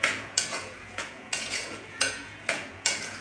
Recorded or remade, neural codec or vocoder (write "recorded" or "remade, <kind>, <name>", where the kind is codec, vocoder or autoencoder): remade, vocoder, Vocos